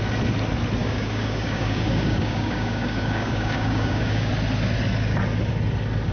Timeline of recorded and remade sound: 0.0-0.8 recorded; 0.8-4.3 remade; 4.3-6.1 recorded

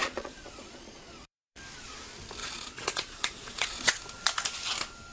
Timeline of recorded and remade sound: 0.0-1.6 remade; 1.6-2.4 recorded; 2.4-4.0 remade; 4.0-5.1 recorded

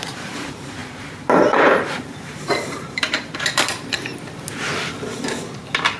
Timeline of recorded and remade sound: 0.0-4.1 remade; 4.1-6.0 recorded

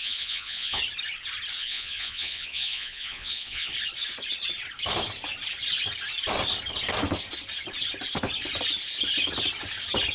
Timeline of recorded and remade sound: 0.0-0.8 remade; 0.8-1.6 recorded; 1.6-3.7 remade; 3.7-10.1 recorded

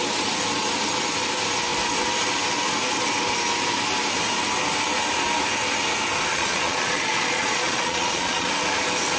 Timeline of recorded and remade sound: 0.0-6.3 recorded; 6.3-8.5 remade; 8.5-9.2 recorded